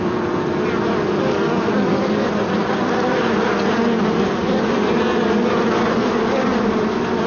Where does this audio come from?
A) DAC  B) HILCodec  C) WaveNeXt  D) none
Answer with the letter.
D